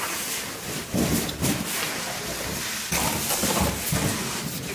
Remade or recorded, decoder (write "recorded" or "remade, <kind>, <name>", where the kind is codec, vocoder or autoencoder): recorded